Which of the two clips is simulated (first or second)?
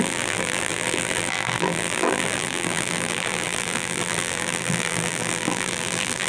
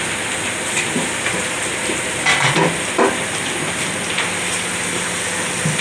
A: first